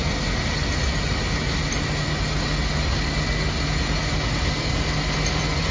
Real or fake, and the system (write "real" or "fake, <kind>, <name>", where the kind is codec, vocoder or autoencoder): real